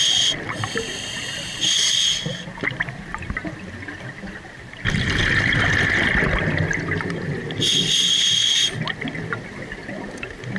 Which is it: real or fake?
real